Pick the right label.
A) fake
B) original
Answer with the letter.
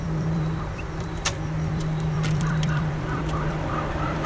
A